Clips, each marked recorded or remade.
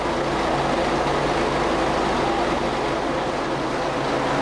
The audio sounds recorded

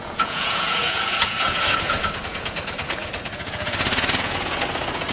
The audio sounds remade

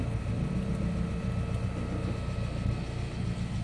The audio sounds recorded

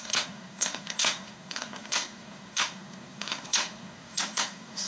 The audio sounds remade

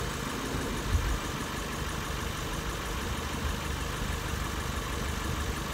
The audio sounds recorded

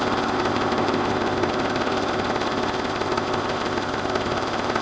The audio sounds remade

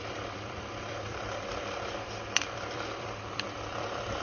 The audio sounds remade